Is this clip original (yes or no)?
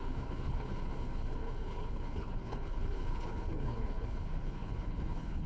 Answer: no